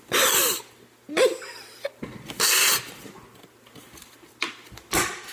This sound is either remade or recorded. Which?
recorded